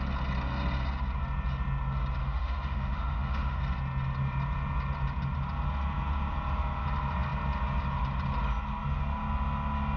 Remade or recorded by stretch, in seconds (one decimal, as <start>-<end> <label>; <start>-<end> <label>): 0.0-2.2 recorded; 2.2-3.6 remade; 3.6-10.0 recorded